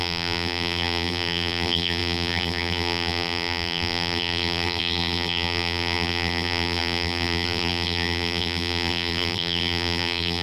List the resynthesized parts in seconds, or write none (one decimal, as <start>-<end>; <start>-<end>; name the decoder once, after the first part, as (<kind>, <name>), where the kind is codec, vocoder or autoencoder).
0.0-10.4 (vocoder, BigVGAN v2)